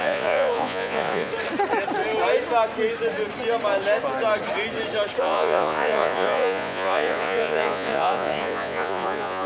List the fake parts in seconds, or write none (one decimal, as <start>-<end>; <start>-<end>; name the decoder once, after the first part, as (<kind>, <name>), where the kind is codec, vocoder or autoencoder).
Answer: 0.0-1.3 (vocoder, Vocos); 5.2-9.5